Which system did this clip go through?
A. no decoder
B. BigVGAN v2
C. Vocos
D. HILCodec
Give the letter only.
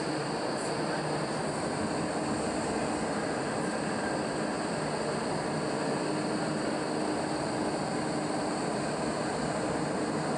A